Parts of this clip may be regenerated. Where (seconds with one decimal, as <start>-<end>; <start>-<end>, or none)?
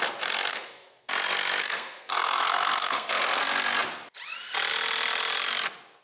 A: 0.5-1.1; 1.6-3.4